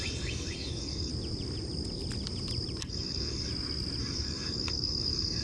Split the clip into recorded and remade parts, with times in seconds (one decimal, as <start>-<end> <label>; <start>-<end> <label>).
0.0-1.1 remade; 1.1-2.9 recorded; 2.9-3.5 remade; 3.5-4.0 recorded; 4.0-5.4 remade